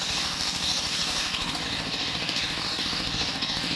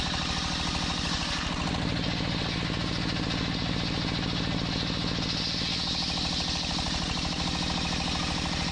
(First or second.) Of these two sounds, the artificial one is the first